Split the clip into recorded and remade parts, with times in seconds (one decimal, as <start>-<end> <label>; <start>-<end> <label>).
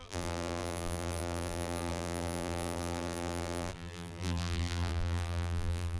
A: 0.0-6.0 remade